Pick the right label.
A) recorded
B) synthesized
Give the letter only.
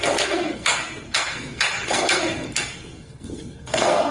B